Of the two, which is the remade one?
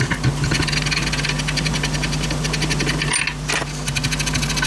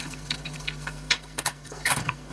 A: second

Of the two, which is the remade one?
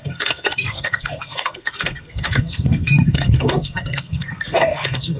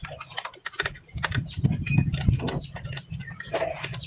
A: first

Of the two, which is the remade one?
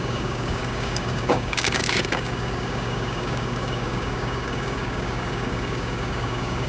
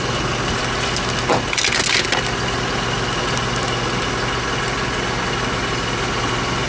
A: first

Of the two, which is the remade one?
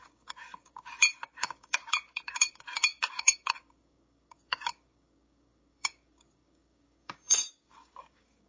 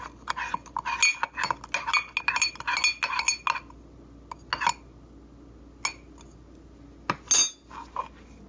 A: first